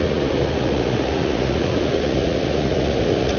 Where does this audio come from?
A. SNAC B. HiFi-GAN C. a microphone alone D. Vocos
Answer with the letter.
D